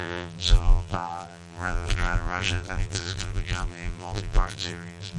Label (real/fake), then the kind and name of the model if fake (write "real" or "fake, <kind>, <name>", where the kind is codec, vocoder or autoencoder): fake, vocoder, BigVGAN v2